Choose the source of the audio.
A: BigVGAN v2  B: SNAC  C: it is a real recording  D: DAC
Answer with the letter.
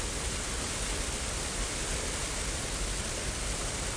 C